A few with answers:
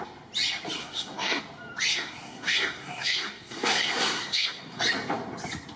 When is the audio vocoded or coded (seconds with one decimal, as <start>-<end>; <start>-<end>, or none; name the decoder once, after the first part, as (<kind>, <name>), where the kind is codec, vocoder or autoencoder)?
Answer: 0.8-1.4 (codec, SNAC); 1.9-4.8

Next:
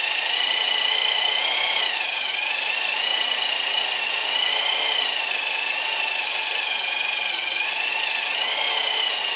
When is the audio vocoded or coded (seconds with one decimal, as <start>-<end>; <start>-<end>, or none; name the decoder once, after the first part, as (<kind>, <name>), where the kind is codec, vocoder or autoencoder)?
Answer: none

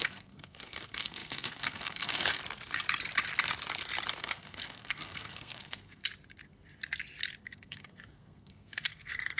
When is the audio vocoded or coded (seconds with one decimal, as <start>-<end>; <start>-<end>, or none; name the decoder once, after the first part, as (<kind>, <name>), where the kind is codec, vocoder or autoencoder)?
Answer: 0.0-2.4 (codec, SNAC); 4.2-6.0; 7.4-9.4

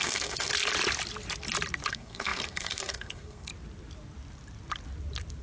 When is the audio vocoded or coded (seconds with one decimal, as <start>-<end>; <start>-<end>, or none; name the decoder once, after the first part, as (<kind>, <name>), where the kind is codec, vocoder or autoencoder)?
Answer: 0.0-0.5 (codec, SNAC); 1.9-3.5